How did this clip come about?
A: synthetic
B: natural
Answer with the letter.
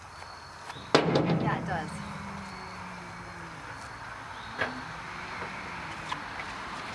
B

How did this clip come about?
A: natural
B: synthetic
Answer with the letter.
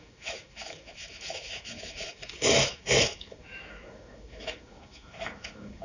B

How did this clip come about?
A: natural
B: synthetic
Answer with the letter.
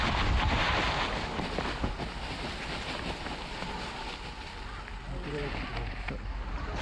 A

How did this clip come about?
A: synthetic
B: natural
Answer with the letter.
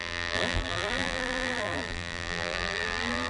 A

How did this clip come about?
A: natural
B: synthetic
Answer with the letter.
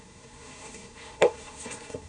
B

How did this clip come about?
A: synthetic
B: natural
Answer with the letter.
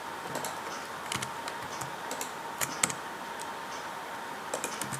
B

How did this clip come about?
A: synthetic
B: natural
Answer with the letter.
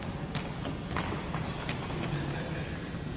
B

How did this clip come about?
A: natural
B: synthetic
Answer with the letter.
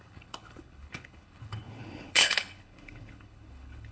B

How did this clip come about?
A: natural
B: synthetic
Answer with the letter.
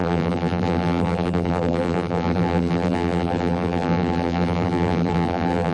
B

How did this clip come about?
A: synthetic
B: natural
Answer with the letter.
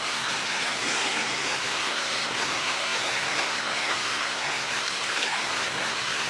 A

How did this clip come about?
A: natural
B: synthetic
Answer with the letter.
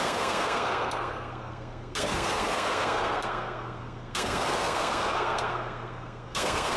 B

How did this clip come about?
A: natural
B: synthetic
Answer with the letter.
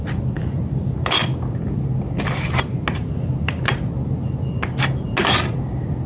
A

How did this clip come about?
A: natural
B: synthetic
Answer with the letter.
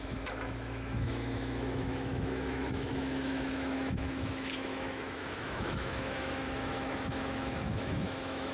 B